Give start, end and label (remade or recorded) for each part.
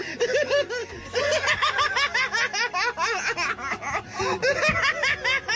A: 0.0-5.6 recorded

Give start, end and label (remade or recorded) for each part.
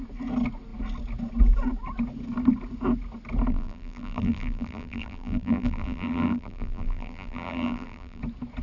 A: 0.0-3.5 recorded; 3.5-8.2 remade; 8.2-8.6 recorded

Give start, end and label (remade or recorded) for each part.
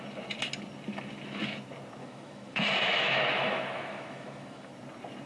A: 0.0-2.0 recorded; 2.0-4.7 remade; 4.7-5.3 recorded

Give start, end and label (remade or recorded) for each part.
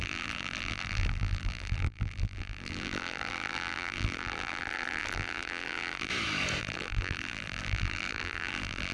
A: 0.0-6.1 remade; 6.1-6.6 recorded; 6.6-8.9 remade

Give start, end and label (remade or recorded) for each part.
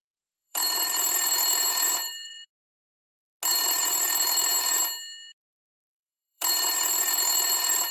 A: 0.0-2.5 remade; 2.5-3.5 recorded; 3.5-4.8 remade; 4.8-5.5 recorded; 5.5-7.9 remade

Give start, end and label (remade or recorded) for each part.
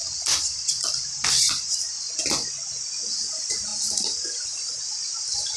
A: 0.0-5.6 recorded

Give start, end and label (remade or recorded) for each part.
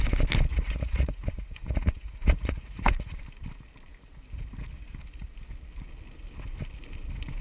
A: 0.0-0.5 recorded; 0.5-3.2 remade; 3.2-7.4 recorded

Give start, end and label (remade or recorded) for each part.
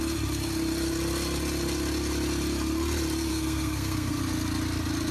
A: 0.0-3.3 recorded; 3.3-4.2 remade; 4.2-5.1 recorded